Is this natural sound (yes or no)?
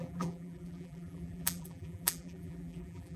no